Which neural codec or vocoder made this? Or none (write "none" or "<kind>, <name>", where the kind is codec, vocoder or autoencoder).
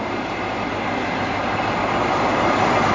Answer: none